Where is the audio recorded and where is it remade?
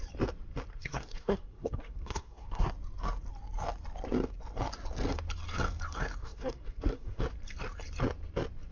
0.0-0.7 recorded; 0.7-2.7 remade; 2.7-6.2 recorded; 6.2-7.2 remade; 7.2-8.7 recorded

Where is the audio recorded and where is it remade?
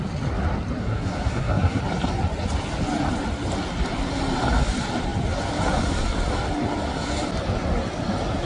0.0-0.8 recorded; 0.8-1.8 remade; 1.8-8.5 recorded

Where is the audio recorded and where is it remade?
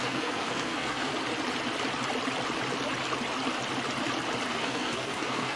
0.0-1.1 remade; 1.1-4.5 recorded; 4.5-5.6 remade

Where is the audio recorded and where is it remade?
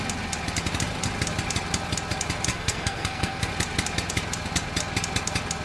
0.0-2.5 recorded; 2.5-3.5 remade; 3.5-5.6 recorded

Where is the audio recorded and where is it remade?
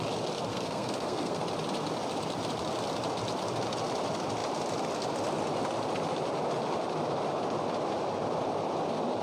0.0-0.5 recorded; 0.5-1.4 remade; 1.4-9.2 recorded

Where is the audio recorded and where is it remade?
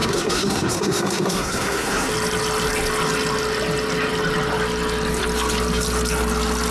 0.0-2.1 remade; 2.1-6.7 recorded